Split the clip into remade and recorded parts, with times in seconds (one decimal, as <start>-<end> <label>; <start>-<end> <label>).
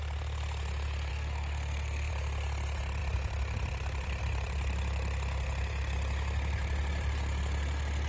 0.0-1.1 recorded; 1.1-2.1 remade; 2.1-8.1 recorded